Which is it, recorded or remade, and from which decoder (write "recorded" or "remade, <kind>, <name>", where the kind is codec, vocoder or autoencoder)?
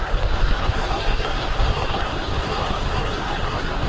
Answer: remade, codec, SNAC